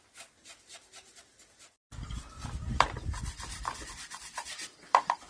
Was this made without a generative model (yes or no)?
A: yes